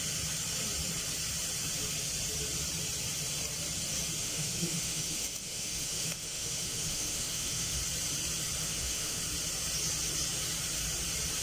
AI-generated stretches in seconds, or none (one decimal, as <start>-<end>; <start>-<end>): 4.2-7.8; 8.6-9.2